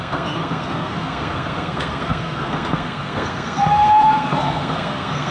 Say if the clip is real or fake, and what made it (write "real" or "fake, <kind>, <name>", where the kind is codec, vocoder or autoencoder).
fake, codec, SNAC